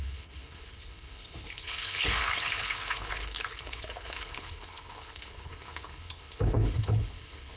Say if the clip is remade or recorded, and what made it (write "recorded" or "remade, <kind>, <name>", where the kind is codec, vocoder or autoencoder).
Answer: remade, codec, HILCodec